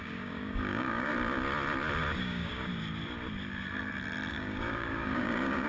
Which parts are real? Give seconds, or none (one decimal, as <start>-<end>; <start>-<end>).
1.1-2.2; 2.7-4.3